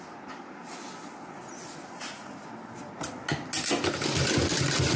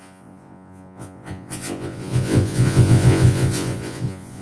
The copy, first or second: second